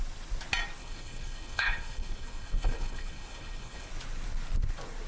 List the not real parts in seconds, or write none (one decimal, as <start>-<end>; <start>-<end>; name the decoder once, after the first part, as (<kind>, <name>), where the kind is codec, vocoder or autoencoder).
0.8-3.9 (codec, HILCodec)